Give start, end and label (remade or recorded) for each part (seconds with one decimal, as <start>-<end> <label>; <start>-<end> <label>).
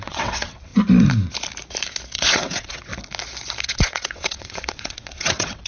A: 0.0-0.7 remade; 0.7-2.1 recorded; 2.1-2.9 remade; 2.9-3.6 recorded; 3.6-5.7 remade